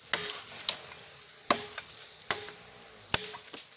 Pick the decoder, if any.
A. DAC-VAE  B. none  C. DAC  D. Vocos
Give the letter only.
B